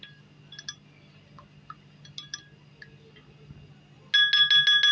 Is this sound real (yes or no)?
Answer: yes